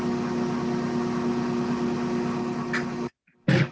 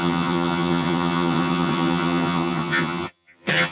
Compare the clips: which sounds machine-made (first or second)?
second